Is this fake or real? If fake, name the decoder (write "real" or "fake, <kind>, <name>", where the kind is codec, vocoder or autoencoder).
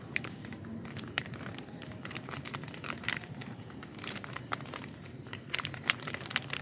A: fake, vocoder, BigVGAN v2